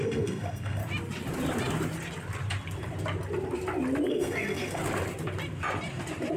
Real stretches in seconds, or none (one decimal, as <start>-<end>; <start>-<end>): 0.8-4.1; 4.8-6.4